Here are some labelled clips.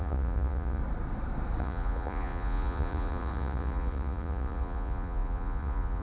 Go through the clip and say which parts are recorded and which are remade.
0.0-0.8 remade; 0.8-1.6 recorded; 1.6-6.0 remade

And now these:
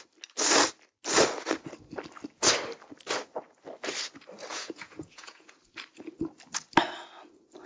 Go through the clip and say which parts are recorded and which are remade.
0.0-4.5 recorded; 4.5-5.6 remade; 5.6-7.7 recorded

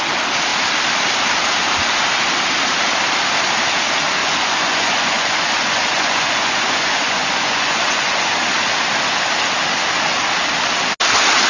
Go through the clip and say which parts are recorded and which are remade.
0.0-4.2 recorded; 4.2-8.4 remade; 8.4-11.5 recorded

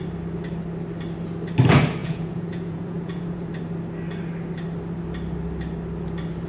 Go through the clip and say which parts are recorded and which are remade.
0.0-2.0 recorded; 2.0-3.5 remade; 3.5-6.5 recorded